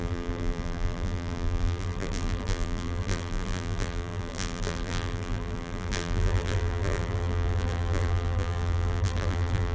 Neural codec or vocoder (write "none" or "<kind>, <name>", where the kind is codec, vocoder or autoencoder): vocoder, BigVGAN v2